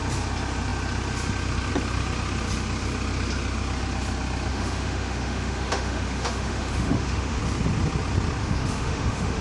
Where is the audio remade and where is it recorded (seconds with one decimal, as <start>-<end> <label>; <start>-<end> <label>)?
0.0-4.5 recorded; 4.5-7.4 remade; 7.4-8.4 recorded; 8.4-9.4 remade